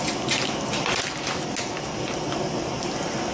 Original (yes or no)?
yes